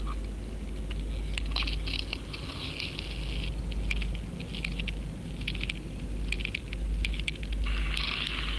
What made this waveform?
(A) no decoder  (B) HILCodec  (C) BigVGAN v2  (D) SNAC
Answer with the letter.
A